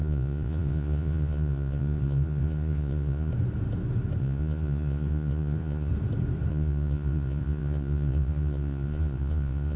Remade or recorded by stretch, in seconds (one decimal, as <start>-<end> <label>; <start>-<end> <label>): 0.0-3.3 remade; 3.3-4.2 recorded; 4.2-5.9 remade; 5.9-6.5 recorded; 6.5-9.8 remade